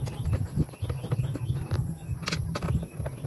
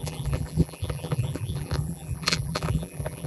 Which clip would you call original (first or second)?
first